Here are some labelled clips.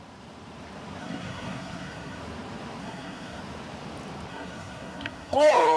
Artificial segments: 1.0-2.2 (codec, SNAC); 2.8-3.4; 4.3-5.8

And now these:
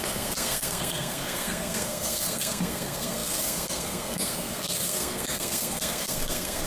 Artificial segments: 0.0-6.7 (codec, SNAC)